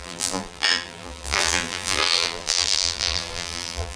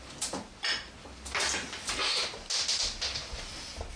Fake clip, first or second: first